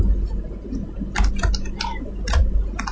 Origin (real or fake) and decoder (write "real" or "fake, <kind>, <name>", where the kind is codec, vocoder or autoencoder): real